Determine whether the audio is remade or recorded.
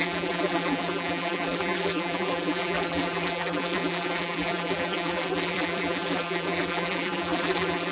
remade